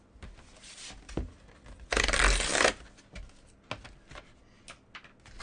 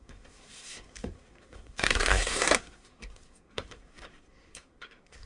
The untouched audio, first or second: first